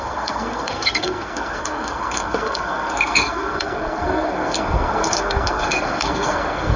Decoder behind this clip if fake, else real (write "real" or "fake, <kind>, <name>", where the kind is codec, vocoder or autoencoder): fake, codec, SNAC